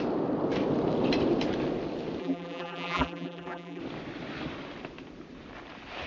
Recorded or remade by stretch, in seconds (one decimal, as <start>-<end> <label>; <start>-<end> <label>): 0.0-2.2 recorded; 2.2-3.8 remade; 3.8-6.1 recorded